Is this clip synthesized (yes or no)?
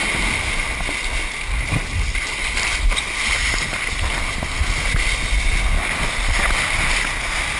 no